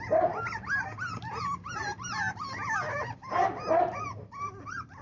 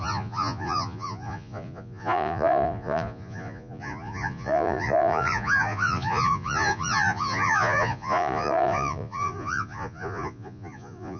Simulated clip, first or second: second